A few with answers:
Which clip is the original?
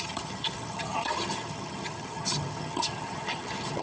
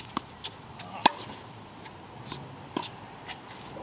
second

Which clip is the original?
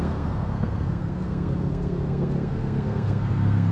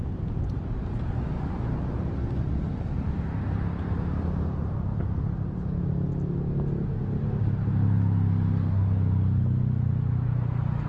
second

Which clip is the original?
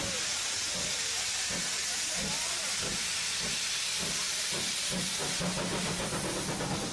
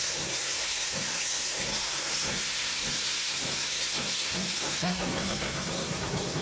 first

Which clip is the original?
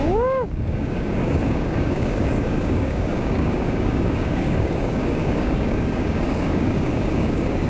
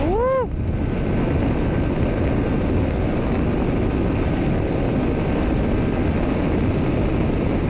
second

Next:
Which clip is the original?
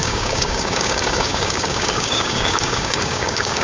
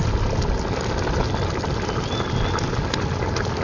second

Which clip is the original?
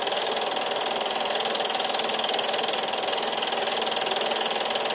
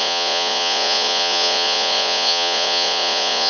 first